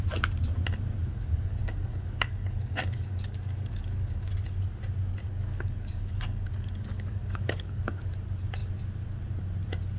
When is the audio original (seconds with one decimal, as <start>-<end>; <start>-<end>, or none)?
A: 0.0-1.1; 4.3-5.3; 8.1-10.0